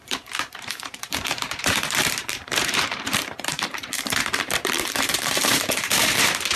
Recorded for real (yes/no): no